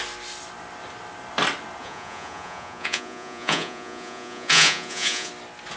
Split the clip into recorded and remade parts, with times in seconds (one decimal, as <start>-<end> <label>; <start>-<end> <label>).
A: 0.0-1.8 recorded; 1.8-5.3 remade; 5.3-5.8 recorded